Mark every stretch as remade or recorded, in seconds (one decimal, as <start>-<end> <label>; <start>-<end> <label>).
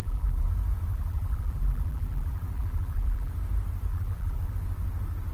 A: 0.0-0.5 remade; 0.5-0.9 recorded; 0.9-3.3 remade; 3.3-3.9 recorded; 3.9-4.5 remade; 4.5-5.3 recorded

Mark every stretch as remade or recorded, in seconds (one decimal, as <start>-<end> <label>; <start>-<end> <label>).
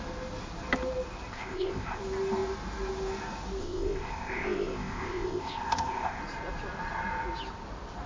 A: 0.0-1.3 recorded; 1.3-2.0 remade; 2.0-3.6 recorded; 3.6-6.2 remade; 6.2-8.1 recorded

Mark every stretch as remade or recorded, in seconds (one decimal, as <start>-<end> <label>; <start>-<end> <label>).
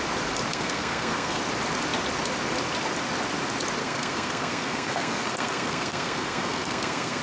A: 0.0-0.5 recorded; 0.5-1.4 remade; 1.4-3.8 recorded; 3.8-7.2 remade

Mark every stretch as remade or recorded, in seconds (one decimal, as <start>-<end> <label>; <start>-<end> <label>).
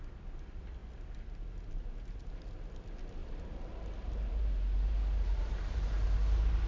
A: 0.0-3.2 recorded; 3.2-5.8 remade; 5.8-6.7 recorded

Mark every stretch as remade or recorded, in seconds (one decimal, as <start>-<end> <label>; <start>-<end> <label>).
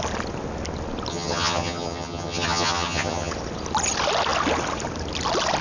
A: 0.0-1.1 recorded; 1.1-3.3 remade; 3.3-5.6 recorded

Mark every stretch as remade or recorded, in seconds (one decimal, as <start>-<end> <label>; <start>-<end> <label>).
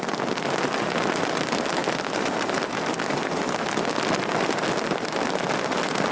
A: 0.0-6.1 recorded